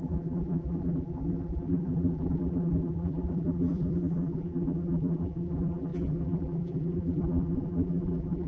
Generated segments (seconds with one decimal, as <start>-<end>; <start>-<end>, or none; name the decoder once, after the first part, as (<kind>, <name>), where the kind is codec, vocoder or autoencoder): 0.0-8.5 (vocoder, BigVGAN v2)